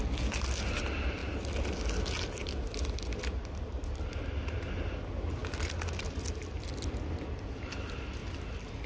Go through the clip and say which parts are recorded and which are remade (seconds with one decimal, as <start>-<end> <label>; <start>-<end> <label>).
0.0-8.9 recorded